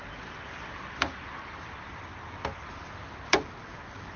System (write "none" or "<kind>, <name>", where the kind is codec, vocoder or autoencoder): none